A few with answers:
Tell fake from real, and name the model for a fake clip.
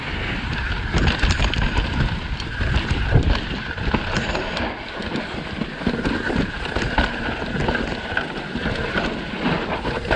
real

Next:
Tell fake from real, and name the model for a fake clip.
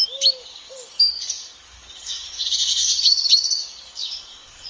fake, codec, DAC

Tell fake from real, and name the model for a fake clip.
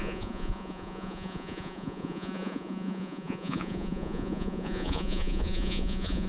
fake, vocoder, Vocos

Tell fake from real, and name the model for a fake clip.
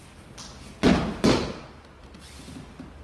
real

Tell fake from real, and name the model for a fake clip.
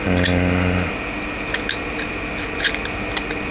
real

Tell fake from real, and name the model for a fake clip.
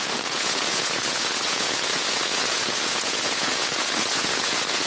fake, vocoder, Vocos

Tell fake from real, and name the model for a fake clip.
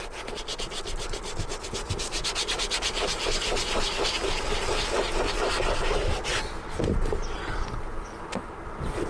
real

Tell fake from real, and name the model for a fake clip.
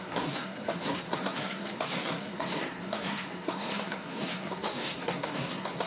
fake, codec, SNAC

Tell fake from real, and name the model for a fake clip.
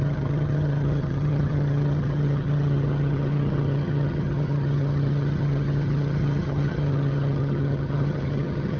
fake, vocoder, HiFi-GAN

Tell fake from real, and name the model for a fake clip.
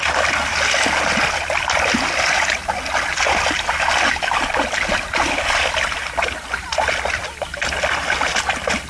real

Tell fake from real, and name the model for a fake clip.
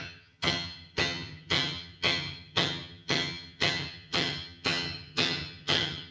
fake, vocoder, HiFi-GAN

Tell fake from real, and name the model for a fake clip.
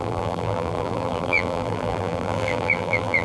fake, vocoder, BigVGAN v2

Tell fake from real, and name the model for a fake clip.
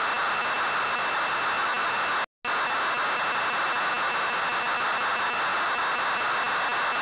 real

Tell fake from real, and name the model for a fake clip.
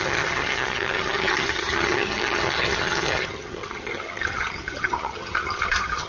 fake, vocoder, HiFi-GAN